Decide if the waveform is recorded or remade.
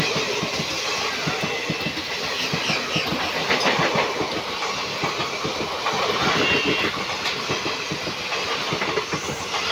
recorded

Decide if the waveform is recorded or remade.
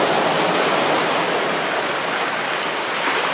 recorded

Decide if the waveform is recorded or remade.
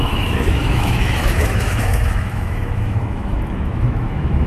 remade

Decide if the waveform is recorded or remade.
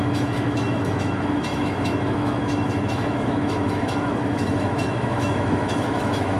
remade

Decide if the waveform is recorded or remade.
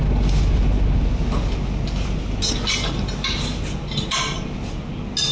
recorded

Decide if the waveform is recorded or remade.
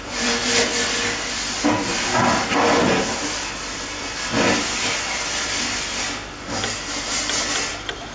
recorded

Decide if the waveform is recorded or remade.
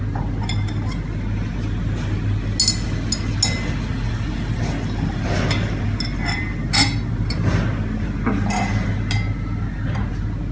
recorded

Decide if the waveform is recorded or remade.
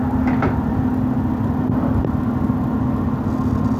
recorded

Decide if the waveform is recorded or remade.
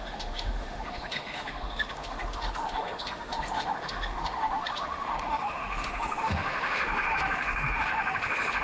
remade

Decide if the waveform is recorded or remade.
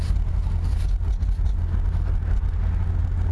recorded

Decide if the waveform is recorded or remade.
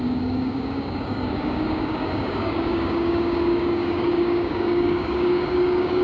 remade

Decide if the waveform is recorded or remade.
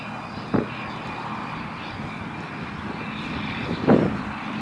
recorded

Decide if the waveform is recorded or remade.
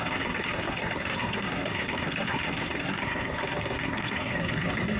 remade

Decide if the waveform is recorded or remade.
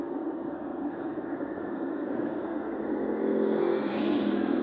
remade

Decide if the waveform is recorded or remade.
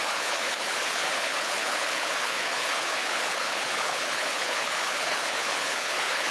remade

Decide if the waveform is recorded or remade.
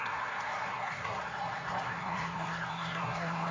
remade